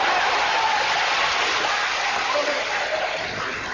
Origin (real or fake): real